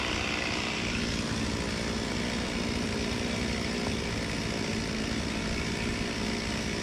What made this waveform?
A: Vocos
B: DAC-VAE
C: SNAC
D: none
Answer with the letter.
D